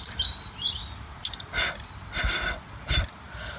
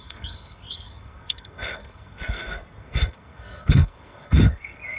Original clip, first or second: first